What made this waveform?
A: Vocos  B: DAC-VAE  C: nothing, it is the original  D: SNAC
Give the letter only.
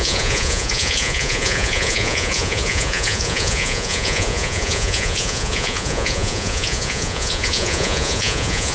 A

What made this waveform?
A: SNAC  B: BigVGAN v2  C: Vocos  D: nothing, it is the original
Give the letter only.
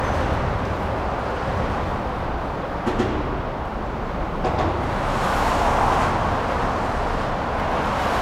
D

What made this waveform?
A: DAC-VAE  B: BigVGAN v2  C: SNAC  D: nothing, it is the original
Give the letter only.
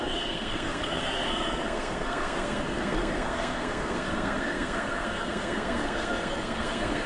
C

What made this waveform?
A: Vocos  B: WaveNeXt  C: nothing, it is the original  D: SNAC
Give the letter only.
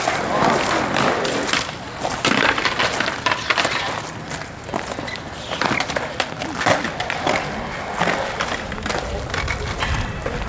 C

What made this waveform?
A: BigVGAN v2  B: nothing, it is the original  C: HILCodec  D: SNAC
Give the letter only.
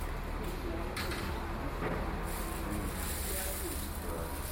B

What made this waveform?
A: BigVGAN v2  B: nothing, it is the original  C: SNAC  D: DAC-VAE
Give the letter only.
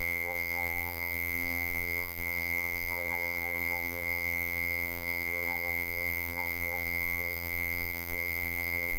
A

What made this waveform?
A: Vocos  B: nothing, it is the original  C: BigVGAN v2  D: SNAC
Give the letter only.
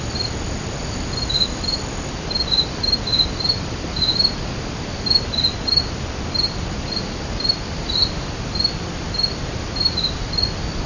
C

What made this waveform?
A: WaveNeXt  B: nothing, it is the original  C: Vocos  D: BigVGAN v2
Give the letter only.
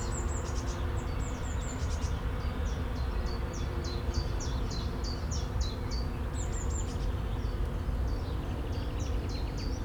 B